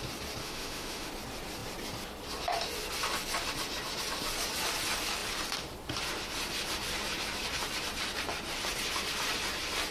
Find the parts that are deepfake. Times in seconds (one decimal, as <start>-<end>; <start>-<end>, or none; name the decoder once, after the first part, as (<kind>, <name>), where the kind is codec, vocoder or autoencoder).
0.4-1.1 (autoencoder, DAC-VAE)